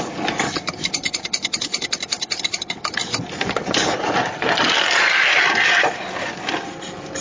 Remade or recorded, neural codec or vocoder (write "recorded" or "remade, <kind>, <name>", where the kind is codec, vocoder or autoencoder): recorded